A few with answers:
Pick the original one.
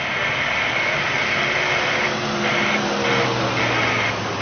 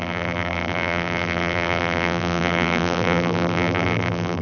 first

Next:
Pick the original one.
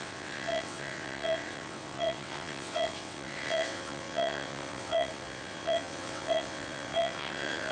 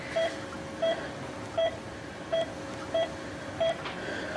second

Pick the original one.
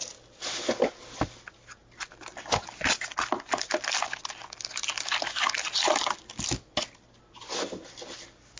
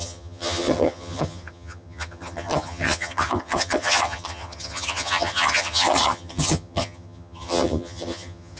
first